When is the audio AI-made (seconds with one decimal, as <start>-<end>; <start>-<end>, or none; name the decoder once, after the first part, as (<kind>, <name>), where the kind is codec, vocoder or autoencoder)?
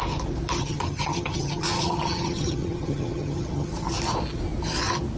0.6-3.7 (vocoder, HiFi-GAN)